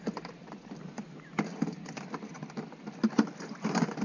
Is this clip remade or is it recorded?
recorded